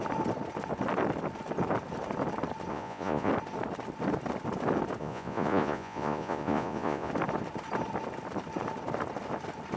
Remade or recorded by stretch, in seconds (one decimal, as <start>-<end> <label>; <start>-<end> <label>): 0.0-2.7 recorded; 2.7-3.3 remade; 3.3-5.0 recorded; 5.0-7.1 remade; 7.1-9.8 recorded